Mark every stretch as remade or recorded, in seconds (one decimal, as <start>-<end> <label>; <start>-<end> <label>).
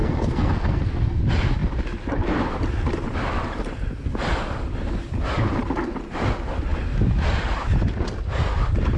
0.0-1.2 remade; 1.2-9.0 recorded